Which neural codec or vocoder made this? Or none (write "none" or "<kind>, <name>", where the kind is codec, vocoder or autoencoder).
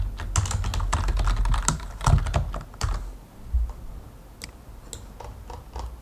none